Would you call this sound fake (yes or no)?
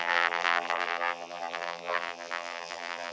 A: yes